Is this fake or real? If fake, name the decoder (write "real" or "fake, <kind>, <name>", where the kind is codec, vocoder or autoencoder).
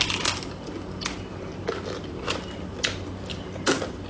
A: real